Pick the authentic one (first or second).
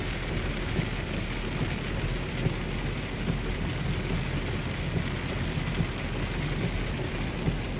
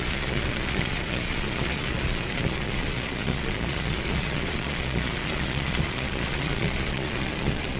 first